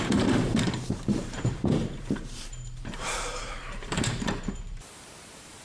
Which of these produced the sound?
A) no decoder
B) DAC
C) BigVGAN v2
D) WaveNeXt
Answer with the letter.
C